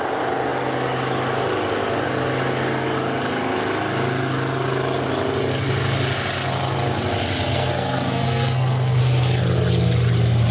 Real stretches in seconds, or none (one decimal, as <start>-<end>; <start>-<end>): 0.0-7.5; 9.0-10.5

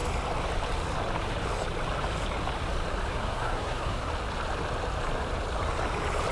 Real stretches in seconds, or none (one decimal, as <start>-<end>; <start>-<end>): 0.0-3.1; 4.1-6.3

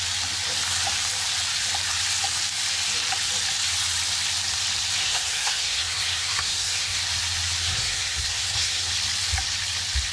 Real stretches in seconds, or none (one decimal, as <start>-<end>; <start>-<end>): 0.0-5.0; 7.0-7.6; 8.9-10.1

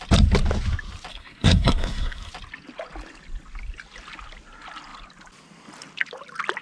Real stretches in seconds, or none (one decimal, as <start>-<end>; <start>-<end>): 0.0-1.1; 2.3-6.6

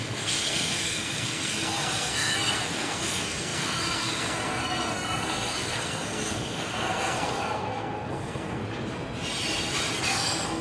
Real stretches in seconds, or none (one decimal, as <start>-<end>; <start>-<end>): 8.6-10.0

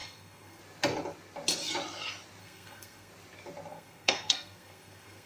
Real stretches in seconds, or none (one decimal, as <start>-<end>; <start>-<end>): 0.6-2.4; 3.1-3.7